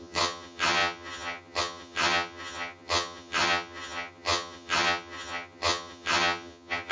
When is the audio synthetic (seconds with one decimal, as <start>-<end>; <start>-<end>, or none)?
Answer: 0.0-6.9